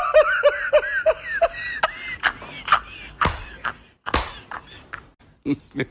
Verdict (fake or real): real